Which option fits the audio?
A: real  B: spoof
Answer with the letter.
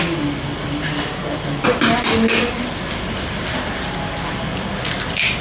A